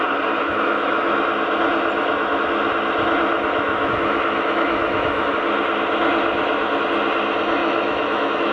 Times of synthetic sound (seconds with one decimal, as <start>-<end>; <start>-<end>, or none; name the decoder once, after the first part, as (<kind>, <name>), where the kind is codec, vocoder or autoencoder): 0.4-1.1 (autoencoder, DAC-VAE); 3.7-5.3; 7.6-8.5